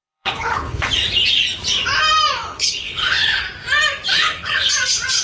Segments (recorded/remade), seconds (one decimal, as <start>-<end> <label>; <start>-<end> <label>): 0.0-0.9 remade; 0.9-2.5 recorded; 2.5-3.4 remade; 3.4-4.1 recorded; 4.1-4.7 remade; 4.7-5.2 recorded